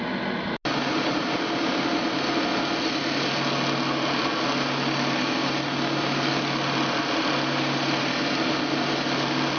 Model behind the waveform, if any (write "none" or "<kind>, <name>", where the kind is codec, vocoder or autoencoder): none